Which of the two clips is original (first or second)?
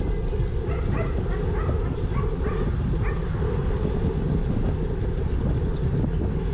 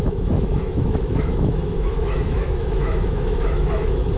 first